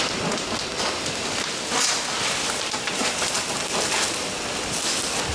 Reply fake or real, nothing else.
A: real